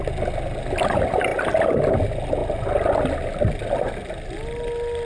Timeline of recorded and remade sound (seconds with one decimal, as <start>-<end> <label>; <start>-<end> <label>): 0.0-5.1 recorded